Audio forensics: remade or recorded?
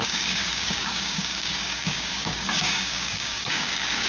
remade